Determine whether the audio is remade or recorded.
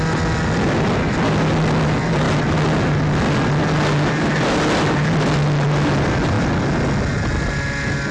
recorded